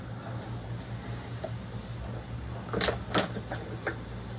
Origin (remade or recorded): recorded